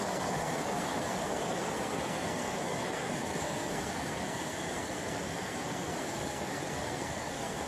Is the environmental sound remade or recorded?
remade